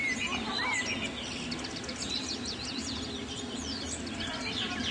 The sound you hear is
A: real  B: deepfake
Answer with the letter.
A